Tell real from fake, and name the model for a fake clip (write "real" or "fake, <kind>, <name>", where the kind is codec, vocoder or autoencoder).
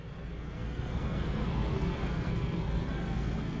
fake, codec, SNAC